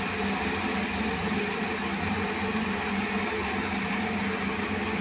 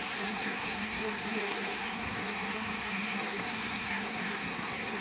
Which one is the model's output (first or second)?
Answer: second